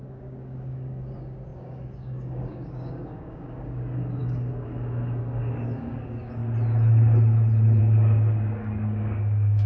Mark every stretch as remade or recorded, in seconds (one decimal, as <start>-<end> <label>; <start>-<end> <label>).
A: 0.0-6.4 remade; 6.4-7.8 recorded; 7.8-9.7 remade